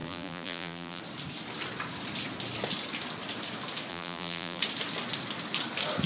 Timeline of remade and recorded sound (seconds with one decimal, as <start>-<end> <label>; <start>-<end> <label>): 0.0-1.0 remade; 1.0-3.9 recorded; 3.9-4.6 remade; 4.6-6.1 recorded